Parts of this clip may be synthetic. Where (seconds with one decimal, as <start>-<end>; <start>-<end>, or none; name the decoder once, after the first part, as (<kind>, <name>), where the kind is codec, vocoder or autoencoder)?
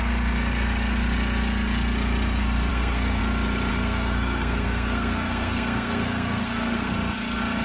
2.7-3.2 (codec, SNAC); 3.7-6.9